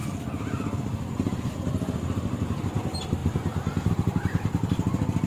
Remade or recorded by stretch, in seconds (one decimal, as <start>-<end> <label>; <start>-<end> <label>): 0.0-2.6 recorded; 2.6-5.3 remade